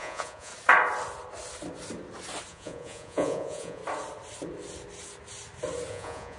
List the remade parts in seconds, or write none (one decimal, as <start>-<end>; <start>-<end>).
0.0-0.5; 2.5-3.8; 5.9-6.4